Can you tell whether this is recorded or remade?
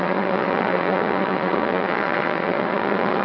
remade